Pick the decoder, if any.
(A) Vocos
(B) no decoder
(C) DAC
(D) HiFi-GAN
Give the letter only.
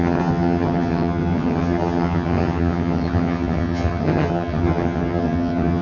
D